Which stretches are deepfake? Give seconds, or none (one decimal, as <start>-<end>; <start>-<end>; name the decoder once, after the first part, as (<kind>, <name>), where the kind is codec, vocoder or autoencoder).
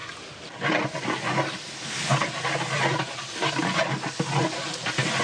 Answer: none